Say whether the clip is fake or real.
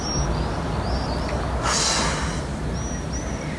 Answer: real